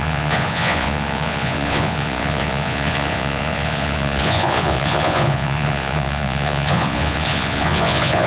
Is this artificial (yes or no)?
yes